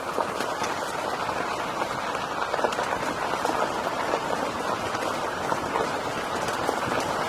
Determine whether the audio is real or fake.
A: real